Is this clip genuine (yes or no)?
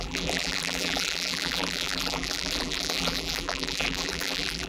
no